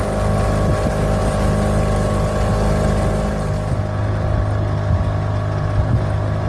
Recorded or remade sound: recorded